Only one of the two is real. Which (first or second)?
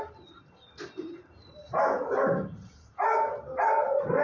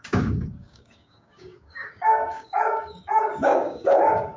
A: first